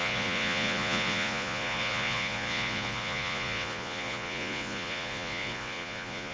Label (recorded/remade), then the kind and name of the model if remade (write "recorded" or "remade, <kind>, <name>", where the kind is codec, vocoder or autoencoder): remade, vocoder, Vocos